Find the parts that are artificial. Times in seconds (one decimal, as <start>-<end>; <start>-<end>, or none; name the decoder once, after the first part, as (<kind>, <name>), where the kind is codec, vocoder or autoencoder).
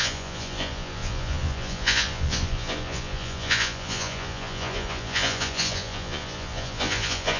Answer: 0.0-7.4 (vocoder, Vocos)